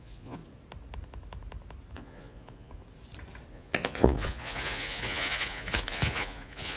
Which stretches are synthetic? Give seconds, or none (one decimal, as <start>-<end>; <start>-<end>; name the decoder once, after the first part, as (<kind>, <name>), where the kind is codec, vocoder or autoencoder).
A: 0.0-0.4 (vocoder, Vocos); 1.9-2.8; 3.5-6.8